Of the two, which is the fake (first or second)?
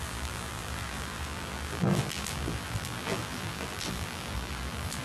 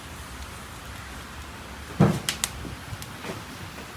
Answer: first